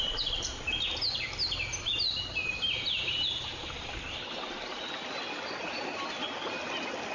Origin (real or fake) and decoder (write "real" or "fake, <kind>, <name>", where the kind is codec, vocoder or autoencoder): real